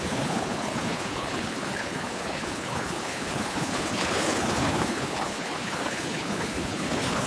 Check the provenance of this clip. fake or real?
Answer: fake